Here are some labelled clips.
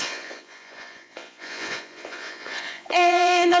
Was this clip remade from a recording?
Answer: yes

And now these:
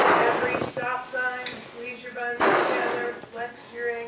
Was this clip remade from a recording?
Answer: no